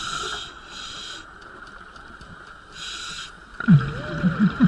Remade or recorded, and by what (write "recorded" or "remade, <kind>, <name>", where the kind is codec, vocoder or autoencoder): recorded